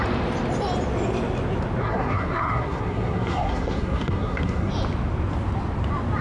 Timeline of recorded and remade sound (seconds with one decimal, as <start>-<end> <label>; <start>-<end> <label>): 0.0-1.8 recorded; 1.8-4.7 remade; 4.7-6.2 recorded